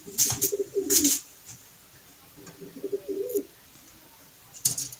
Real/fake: real